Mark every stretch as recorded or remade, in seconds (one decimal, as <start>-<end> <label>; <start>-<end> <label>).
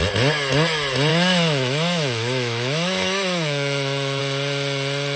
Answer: 0.0-1.1 recorded; 1.1-4.2 remade; 4.2-5.2 recorded